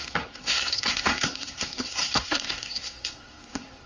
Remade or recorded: remade